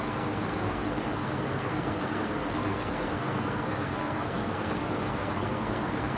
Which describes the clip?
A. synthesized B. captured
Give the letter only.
A